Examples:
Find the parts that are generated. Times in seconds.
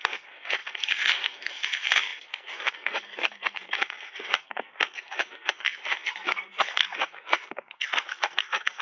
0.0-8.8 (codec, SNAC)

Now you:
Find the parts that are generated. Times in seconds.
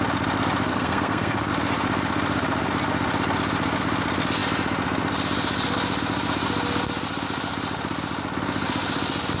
0.7-1.5 (codec, SNAC)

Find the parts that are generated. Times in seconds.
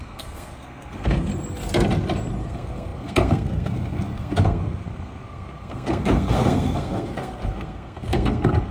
0.0-1.3 (codec, SNAC); 2.4-8.7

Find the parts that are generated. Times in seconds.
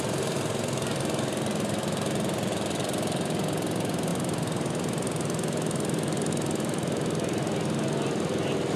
none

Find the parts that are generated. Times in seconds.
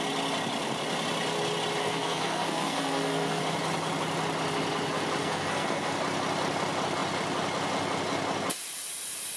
1.8-3.4 (codec, SNAC); 5.2-5.9